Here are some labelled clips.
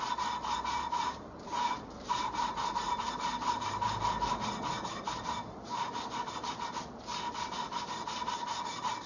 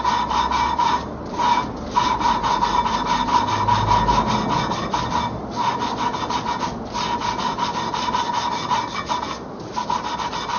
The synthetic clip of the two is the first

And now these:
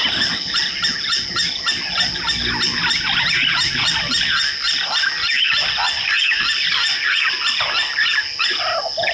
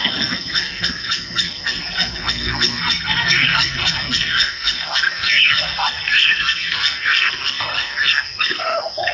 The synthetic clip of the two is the second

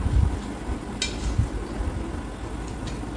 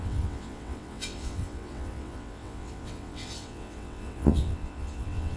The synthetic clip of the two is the second